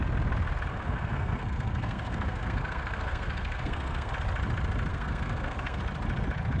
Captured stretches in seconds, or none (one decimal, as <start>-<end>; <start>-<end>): 0.0-0.7; 4.1-4.9; 5.8-6.6